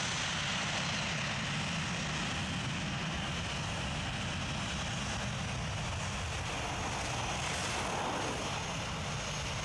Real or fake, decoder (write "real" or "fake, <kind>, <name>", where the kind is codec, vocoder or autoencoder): real